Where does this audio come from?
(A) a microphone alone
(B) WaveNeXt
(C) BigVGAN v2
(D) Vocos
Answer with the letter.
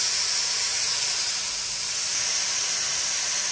C